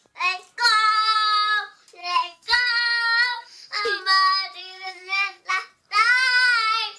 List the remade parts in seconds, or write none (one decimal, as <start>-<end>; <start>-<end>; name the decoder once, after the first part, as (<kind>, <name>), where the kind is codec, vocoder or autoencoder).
2.0-2.7 (codec, SNAC); 3.3-3.8; 4.6-5.4